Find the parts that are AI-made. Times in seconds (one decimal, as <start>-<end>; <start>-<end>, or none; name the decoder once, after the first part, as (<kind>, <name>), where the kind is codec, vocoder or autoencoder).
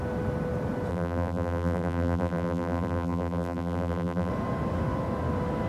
0.9-4.3 (vocoder, BigVGAN v2)